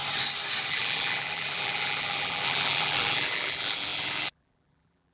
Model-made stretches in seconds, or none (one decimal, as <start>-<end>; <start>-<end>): 0.7-5.1

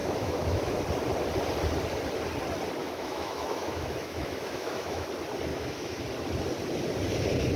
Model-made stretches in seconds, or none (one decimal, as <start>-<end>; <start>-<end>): 0.0-0.8; 2.8-5.1; 5.5-6.0

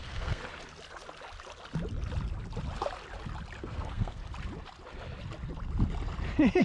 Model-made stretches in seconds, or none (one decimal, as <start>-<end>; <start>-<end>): 0.0-0.4; 3.6-4.2

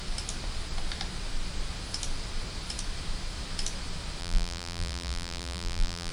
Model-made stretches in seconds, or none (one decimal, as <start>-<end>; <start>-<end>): 4.2-6.1

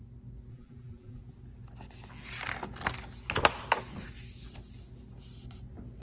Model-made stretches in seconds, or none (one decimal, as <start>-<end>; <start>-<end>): 0.5-1.2

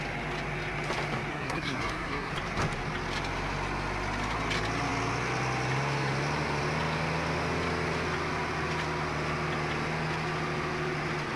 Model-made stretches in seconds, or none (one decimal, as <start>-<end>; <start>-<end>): 1.3-2.3

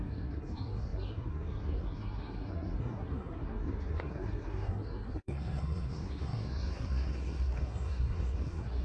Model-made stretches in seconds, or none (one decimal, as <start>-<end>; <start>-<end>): 0.0-8.8

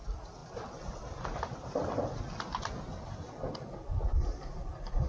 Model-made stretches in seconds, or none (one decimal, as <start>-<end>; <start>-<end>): none